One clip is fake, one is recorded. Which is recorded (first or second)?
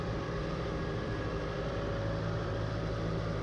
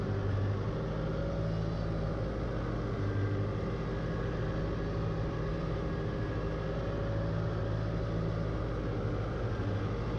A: second